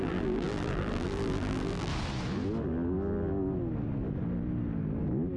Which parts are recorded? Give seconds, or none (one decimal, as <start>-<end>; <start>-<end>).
1.9-5.4